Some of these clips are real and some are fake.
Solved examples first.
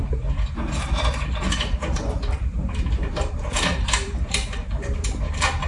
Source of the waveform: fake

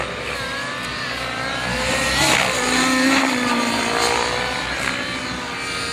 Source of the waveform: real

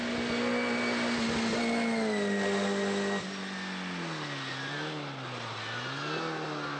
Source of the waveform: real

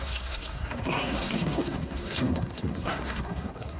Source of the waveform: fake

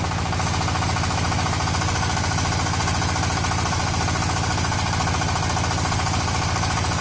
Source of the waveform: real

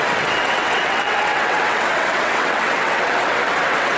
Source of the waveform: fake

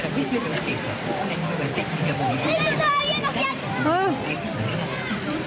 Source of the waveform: real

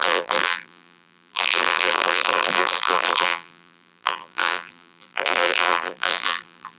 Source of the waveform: fake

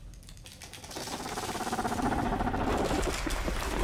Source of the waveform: real